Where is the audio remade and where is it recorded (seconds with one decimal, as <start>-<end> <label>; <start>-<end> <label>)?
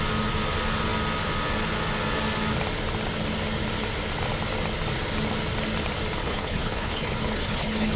0.0-6.2 recorded; 6.2-8.0 remade